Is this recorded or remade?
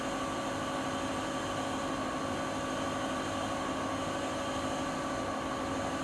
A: recorded